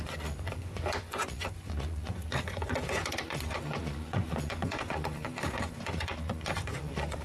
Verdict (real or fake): fake